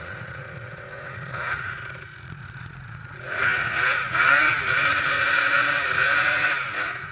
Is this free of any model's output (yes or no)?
no